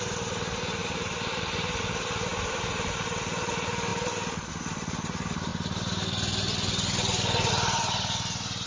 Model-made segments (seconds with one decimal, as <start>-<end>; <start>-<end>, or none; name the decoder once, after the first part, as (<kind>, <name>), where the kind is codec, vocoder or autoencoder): 0.8-1.8 (vocoder, BigVGAN v2)